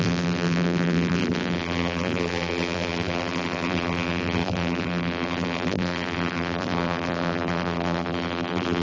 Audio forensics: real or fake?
fake